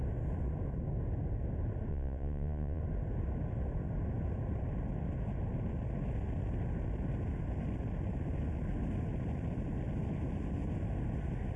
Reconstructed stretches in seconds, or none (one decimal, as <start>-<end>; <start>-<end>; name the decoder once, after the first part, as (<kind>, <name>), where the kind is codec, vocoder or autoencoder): 1.9-2.8 (vocoder, Vocos)